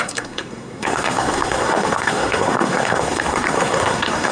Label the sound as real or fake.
fake